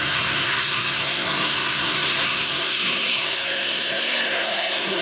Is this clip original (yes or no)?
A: no